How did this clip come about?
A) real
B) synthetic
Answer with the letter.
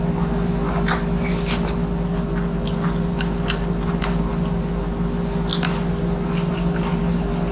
A